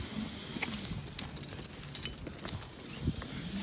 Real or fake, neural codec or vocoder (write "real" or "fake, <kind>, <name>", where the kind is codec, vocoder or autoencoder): real